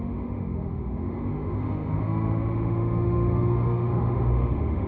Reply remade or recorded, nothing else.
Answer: remade